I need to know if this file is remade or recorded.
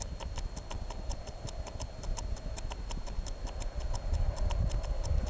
recorded